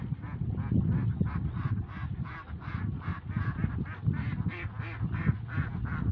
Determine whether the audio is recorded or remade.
recorded